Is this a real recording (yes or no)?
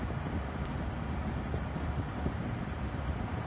yes